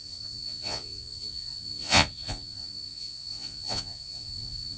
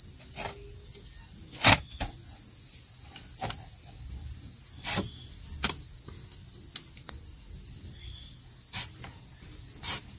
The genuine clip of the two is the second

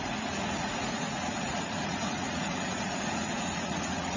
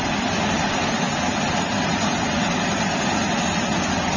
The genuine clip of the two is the second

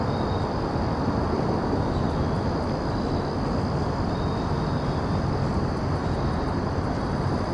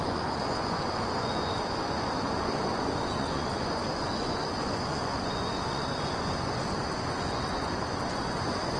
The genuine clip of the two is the first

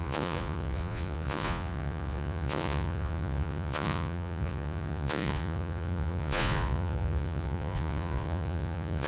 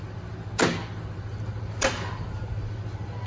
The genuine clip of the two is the second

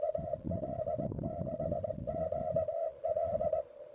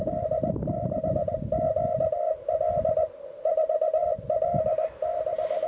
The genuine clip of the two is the second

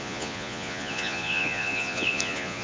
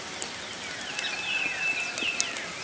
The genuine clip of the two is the second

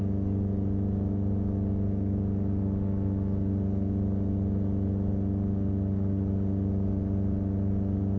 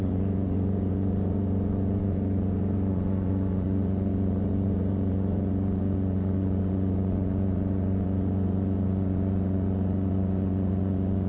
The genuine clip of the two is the first